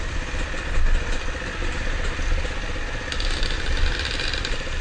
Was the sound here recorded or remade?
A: recorded